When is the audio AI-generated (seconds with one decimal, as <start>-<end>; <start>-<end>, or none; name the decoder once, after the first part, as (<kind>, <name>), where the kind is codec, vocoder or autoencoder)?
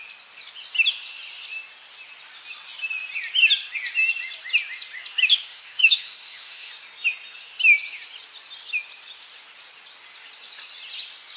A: 5.3-6.7 (autoencoder, DAC-VAE)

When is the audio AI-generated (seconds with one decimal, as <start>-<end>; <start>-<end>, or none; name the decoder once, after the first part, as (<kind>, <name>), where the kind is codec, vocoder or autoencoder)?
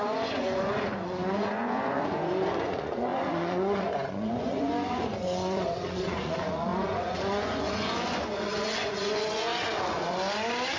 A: 0.0-9.5 (vocoder, Vocos)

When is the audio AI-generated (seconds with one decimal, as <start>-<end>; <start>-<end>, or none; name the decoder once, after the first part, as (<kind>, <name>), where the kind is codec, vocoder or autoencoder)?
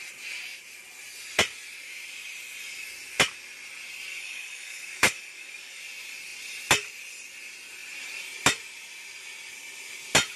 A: 4.1-5.8 (codec, DAC)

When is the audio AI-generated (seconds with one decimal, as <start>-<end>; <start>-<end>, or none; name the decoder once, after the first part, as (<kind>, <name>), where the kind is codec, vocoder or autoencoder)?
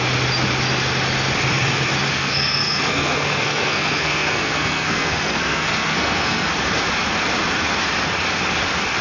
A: 2.1-6.5 (codec, SNAC)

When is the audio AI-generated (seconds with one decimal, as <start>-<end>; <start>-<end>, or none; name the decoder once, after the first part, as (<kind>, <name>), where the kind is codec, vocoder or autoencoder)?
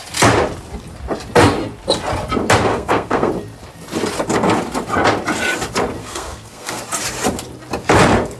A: 2.7-3.3 (codec, SNAC); 6.0-6.8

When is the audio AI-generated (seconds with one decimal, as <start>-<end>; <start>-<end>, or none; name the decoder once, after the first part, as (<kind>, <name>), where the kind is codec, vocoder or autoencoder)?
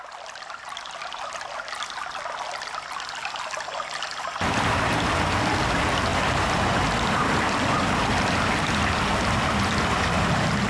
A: 6.1-6.7 (vocoder, BigVGAN v2)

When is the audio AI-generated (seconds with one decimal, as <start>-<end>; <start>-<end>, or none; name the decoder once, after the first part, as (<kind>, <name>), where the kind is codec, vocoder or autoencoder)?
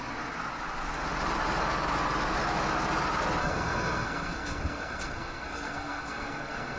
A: 3.4-6.8 (codec, SNAC)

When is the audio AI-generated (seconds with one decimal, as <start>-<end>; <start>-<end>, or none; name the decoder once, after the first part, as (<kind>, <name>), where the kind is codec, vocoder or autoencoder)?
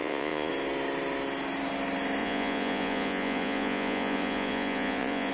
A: 0.0-0.5 (vocoder, Vocos); 2.2-5.3